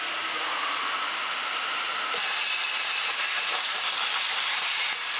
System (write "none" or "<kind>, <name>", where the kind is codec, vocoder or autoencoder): none